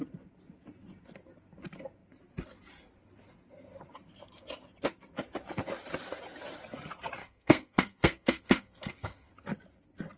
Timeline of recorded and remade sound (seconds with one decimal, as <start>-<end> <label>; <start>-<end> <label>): 0.0-7.2 recorded; 7.2-9.3 remade; 9.3-10.2 recorded